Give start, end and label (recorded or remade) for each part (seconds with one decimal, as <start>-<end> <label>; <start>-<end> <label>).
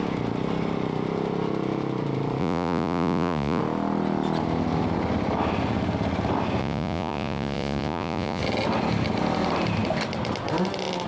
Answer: 0.0-2.4 recorded; 2.4-3.6 remade; 3.6-6.6 recorded; 6.6-8.4 remade; 8.4-11.1 recorded